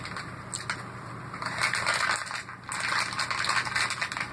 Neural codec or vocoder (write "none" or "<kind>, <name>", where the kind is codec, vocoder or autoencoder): none